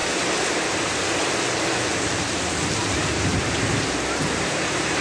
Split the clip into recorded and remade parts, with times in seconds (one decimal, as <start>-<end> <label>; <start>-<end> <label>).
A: 0.0-1.2 remade; 1.2-3.3 recorded; 3.3-5.0 remade